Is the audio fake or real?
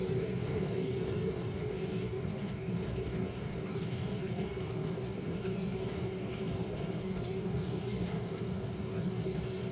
fake